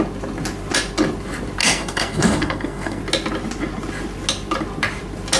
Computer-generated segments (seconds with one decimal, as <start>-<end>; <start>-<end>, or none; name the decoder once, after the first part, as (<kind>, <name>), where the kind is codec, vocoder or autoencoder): 1.6-3.0 (codec, SNAC)